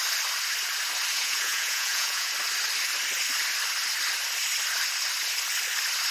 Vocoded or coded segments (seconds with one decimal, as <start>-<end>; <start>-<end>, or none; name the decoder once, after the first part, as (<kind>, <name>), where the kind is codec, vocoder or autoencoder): 1.1-2.3 (vocoder, Vocos)